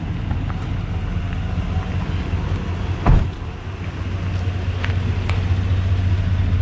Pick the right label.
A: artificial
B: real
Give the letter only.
B